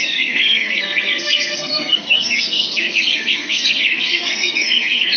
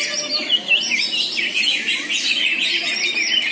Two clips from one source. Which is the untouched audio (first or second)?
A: second